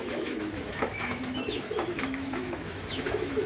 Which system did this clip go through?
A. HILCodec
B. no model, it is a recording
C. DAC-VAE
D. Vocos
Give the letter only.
C